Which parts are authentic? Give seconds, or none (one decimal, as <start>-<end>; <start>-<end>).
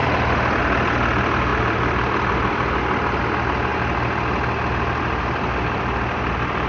0.6-1.5; 3.2-6.7